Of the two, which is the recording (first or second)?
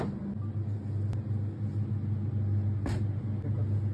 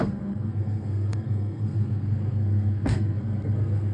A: first